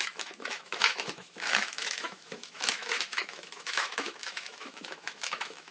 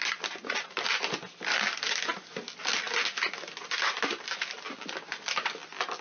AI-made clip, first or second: first